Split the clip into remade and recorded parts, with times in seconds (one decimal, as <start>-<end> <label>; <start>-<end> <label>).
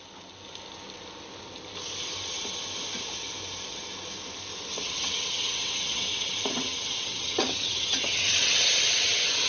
0.0-4.7 recorded; 4.7-9.5 remade